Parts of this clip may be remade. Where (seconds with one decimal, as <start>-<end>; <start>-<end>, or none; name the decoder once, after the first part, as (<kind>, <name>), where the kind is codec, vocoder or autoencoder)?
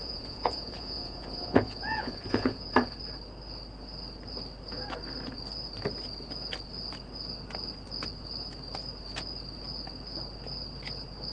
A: 0.0-2.7 (vocoder, Vocos)